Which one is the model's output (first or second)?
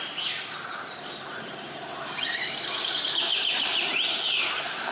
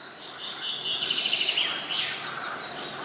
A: first